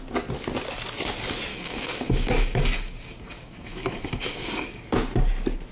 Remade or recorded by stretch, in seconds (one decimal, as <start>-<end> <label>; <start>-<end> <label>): 0.0-1.5 recorded; 1.5-4.9 remade; 4.9-5.7 recorded